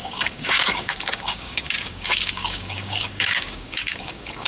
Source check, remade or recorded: remade